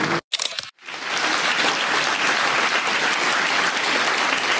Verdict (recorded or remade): recorded